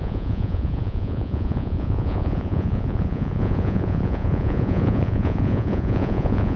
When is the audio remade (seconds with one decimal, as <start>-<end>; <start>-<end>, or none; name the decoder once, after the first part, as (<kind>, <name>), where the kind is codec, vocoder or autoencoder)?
0.0-6.6 (vocoder, Vocos)